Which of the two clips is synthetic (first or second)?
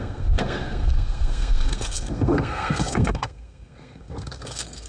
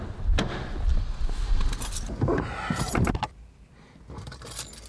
first